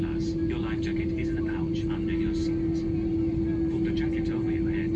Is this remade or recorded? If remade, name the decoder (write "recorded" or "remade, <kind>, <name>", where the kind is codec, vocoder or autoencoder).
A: recorded